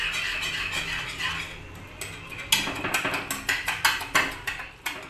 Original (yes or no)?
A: yes